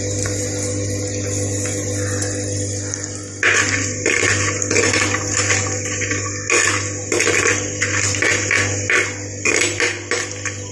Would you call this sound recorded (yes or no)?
yes